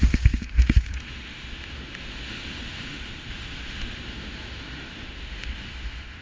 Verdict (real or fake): fake